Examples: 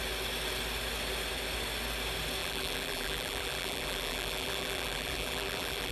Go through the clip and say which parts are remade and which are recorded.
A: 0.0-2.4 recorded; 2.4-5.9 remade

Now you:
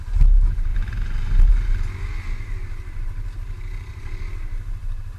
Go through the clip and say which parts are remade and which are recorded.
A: 0.0-5.2 recorded

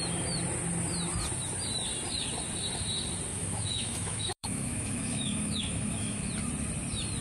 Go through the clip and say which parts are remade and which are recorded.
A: 0.0-3.3 recorded; 3.3-6.3 remade; 6.3-7.2 recorded

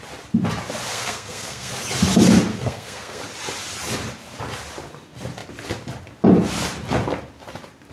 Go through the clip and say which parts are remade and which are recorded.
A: 0.0-0.9 recorded; 0.9-1.7 remade; 1.7-2.5 recorded; 2.5-3.2 remade; 3.2-7.9 recorded